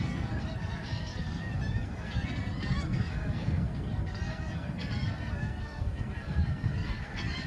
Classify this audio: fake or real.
fake